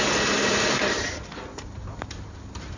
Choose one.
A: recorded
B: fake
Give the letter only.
B